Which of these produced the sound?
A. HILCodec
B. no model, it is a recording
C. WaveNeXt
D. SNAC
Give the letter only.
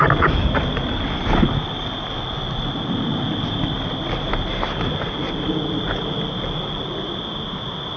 B